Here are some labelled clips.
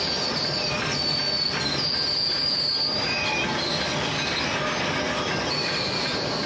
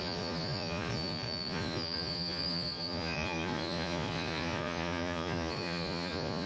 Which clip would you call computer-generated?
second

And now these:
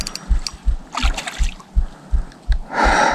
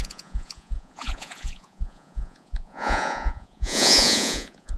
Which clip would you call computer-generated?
second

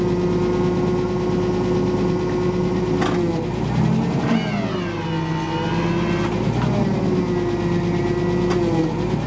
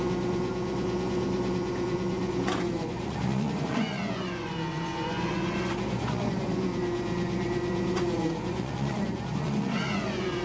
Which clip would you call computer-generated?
second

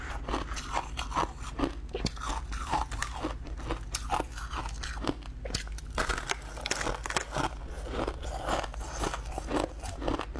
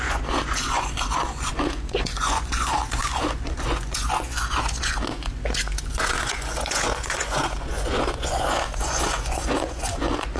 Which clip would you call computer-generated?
second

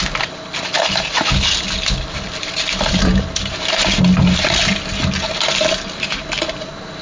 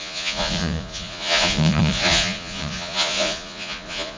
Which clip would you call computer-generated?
second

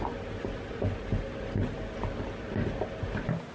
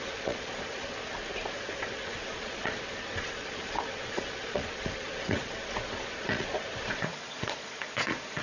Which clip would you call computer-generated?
second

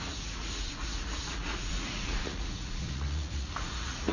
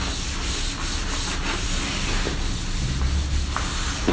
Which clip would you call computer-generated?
first